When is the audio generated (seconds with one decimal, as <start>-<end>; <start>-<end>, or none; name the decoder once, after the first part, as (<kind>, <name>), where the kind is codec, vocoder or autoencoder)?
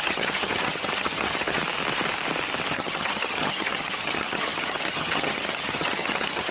0.0-1.6 (vocoder, HiFi-GAN); 2.7-6.5